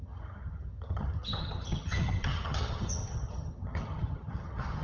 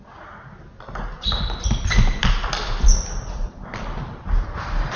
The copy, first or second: first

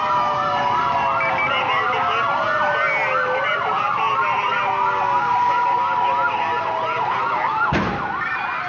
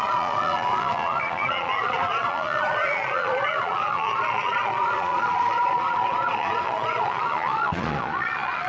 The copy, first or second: second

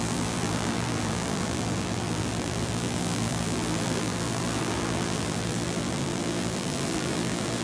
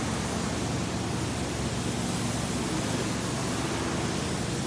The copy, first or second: first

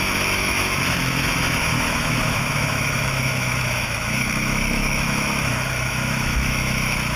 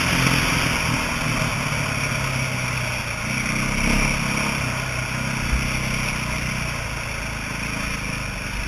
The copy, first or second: first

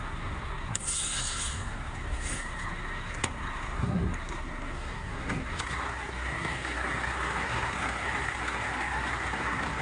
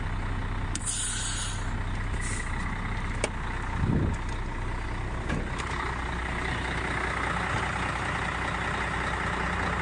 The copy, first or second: first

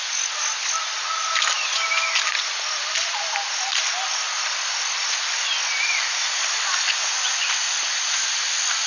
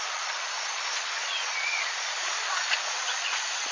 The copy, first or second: second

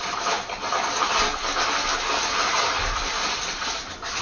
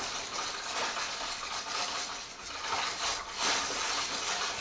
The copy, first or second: first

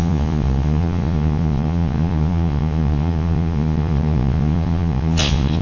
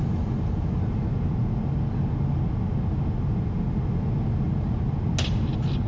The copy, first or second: first